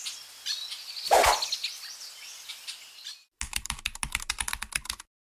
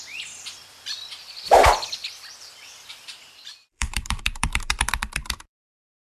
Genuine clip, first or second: first